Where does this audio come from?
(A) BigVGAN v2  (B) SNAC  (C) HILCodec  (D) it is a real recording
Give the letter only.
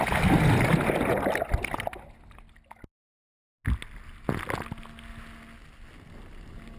D